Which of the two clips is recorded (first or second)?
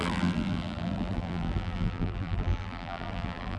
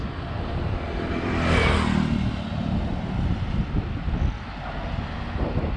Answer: second